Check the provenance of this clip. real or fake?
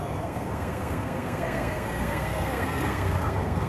fake